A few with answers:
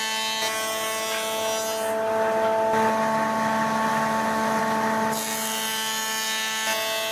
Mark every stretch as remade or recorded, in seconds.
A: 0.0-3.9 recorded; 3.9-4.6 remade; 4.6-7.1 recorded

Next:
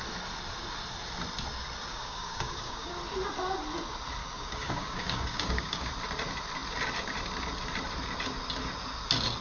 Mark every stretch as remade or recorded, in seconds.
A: 0.0-1.9 recorded; 1.9-2.9 remade; 2.9-4.2 recorded; 4.2-5.9 remade; 5.9-9.4 recorded

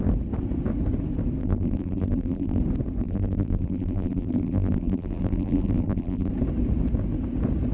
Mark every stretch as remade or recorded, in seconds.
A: 0.0-1.4 recorded; 1.4-2.6 remade; 2.6-3.0 recorded; 3.0-6.3 remade; 6.3-7.7 recorded

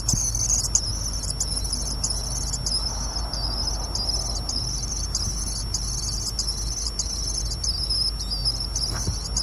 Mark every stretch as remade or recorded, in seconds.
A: 0.0-9.4 recorded

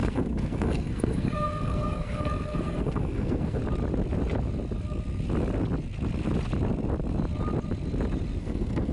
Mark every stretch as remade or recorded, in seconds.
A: 0.0-3.6 remade; 3.6-8.4 recorded; 8.4-8.9 remade

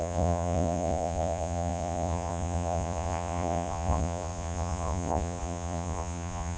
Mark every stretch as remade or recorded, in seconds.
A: 0.0-6.6 remade